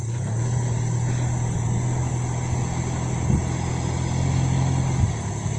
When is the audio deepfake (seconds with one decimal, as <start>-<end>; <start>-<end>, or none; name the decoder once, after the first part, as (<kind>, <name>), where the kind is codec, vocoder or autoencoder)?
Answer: none